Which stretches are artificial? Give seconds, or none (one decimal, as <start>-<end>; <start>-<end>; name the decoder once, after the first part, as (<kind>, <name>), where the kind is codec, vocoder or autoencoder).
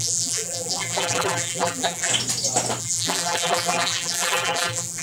0.0-2.1 (vocoder, BigVGAN v2); 2.8-5.0